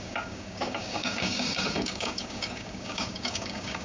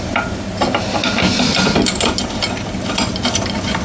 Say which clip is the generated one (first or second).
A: first